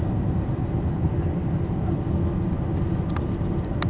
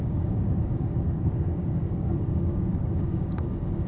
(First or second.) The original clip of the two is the first